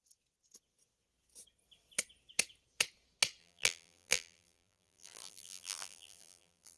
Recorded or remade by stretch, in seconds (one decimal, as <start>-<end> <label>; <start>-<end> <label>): 0.0-3.4 recorded; 3.4-6.8 remade